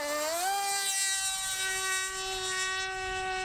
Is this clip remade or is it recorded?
recorded